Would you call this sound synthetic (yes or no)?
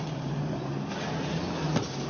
no